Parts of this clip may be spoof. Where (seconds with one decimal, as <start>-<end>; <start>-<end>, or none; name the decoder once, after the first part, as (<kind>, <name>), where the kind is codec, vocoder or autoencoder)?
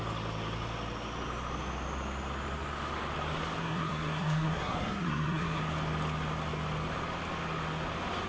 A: 3.6-5.6 (codec, SNAC)